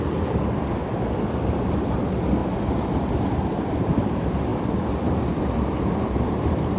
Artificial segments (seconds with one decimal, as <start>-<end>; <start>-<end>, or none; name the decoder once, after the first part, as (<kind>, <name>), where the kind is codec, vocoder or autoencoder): none